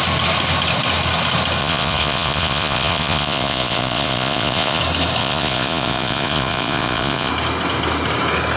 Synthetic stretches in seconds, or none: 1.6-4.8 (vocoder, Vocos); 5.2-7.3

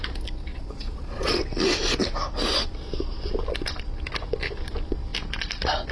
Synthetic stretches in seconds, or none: 0.5-1.4 (vocoder, Vocos)